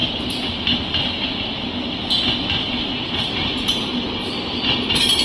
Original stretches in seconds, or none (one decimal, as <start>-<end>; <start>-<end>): 0.0-5.2